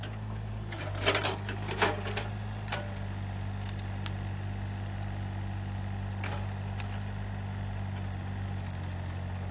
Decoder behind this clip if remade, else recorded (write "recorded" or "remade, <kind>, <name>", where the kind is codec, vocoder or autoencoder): recorded